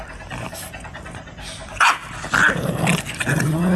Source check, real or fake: fake